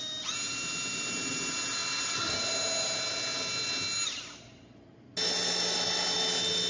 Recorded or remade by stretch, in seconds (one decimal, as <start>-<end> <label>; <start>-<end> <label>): 0.0-6.7 recorded